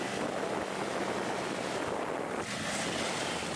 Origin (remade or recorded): recorded